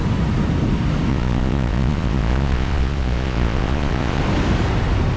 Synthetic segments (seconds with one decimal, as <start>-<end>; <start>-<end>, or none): 1.1-4.2